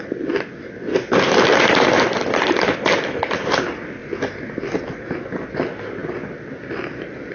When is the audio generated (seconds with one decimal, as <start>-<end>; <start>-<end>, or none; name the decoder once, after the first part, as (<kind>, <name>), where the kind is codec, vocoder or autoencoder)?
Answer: none